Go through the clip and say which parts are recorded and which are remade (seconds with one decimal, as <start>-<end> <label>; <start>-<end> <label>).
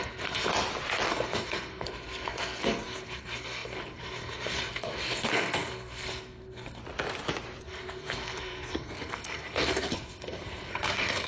0.0-0.5 remade; 0.5-1.1 recorded; 1.1-6.8 remade; 6.8-7.6 recorded; 7.6-11.3 remade